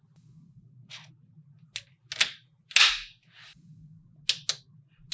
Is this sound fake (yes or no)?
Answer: no